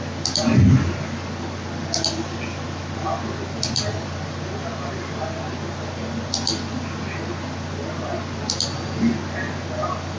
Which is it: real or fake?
real